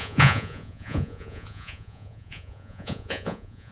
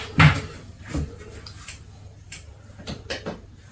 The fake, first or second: first